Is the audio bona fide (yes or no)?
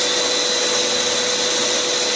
yes